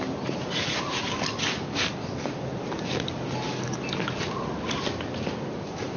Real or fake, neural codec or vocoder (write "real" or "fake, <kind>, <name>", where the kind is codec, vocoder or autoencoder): real